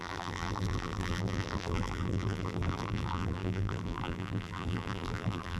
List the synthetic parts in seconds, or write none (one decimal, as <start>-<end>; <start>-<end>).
0.0-5.6